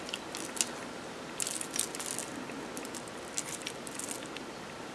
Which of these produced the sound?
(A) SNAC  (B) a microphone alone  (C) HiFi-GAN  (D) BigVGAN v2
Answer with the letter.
B